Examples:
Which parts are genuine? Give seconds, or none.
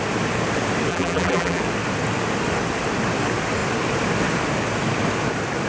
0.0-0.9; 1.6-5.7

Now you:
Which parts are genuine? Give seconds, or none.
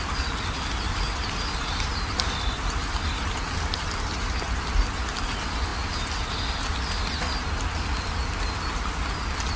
0.0-9.6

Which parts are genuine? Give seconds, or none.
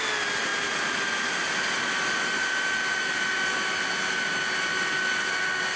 0.0-5.8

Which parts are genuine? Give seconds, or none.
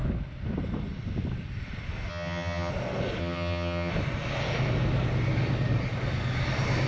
0.0-2.1; 2.7-3.2; 3.9-6.9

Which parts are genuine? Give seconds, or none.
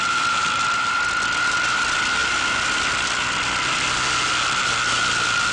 0.0-5.5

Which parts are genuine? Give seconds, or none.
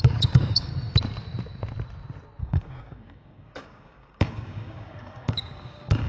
0.7-2.4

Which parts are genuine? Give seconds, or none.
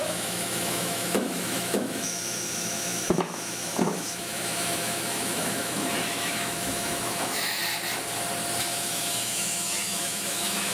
7.6-8.6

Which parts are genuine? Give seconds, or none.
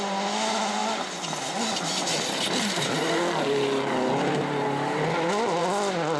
0.0-6.2